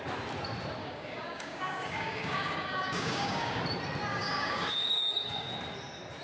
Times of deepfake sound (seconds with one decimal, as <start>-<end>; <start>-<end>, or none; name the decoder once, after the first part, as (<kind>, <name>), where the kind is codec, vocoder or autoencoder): 0.8-3.6 (codec, DAC); 4.1-5.5